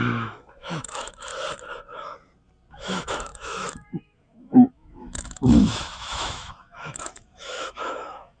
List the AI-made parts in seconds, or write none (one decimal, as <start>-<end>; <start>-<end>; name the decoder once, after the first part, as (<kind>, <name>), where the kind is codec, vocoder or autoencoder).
0.0-1.3 (autoencoder, DAC-VAE); 2.7-8.4